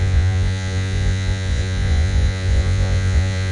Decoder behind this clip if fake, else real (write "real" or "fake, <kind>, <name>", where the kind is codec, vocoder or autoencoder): fake, vocoder, Vocos